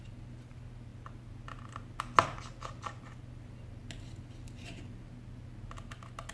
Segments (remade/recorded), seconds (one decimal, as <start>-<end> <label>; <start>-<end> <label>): 0.0-6.3 recorded